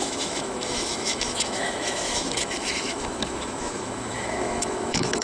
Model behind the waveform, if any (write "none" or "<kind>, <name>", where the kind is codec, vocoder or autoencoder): autoencoder, DAC-VAE